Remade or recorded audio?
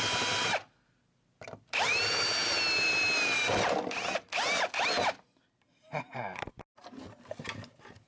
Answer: recorded